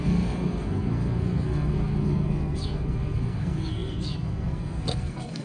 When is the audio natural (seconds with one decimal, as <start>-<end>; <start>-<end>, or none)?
none